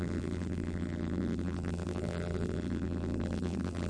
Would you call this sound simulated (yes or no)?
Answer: yes